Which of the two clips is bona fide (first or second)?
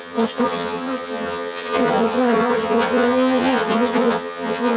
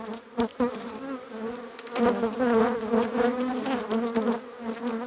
second